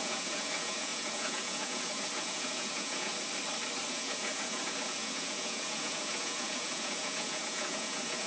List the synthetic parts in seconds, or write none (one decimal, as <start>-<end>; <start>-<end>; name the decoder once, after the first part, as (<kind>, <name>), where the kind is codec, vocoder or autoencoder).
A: 0.0-3.1 (vocoder, Vocos); 3.9-8.3